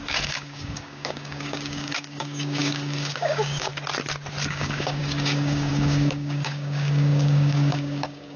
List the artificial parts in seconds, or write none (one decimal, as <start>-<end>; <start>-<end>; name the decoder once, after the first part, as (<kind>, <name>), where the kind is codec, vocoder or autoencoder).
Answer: 0.0-3.7 (codec, DAC); 4.5-8.4